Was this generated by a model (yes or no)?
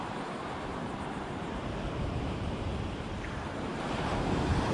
yes